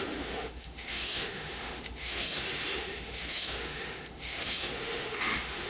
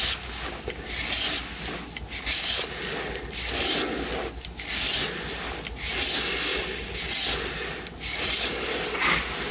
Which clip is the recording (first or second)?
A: second